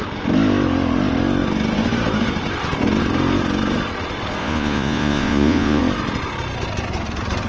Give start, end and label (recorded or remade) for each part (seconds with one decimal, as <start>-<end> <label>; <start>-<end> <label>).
0.0-4.4 recorded; 4.4-5.8 remade; 5.8-7.5 recorded